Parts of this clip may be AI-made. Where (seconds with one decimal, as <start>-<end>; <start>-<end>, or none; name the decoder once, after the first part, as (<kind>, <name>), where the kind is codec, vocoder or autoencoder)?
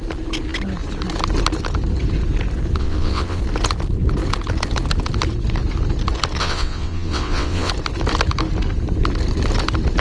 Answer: 2.8-3.4 (vocoder, WaveNeXt); 6.4-7.7